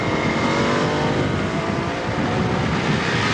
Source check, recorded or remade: recorded